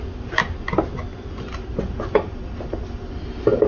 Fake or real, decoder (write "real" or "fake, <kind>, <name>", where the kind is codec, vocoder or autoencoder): real